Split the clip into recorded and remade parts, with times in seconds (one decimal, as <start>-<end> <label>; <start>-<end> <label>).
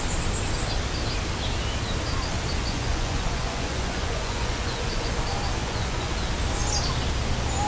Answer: 0.0-2.6 recorded; 2.6-5.1 remade; 5.1-5.6 recorded; 5.6-6.1 remade; 6.1-7.7 recorded